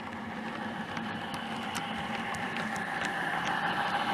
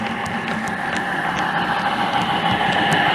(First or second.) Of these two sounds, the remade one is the first